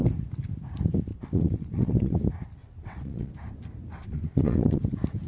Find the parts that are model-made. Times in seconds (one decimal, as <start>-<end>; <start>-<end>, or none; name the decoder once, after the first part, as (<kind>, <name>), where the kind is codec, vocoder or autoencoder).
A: 1.1-2.2 (vocoder, WaveNeXt); 2.6-3.3; 4.0-4.8